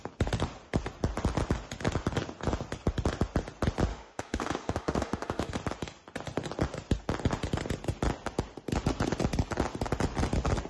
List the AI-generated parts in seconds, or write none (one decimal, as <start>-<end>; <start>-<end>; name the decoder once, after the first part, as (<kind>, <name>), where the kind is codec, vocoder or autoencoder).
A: 3.9-5.5 (autoencoder, DAC-VAE)